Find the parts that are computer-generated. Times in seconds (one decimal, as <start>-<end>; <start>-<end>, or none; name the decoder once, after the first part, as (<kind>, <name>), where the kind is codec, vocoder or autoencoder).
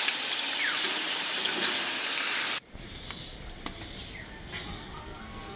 4.7-5.6 (codec, SNAC)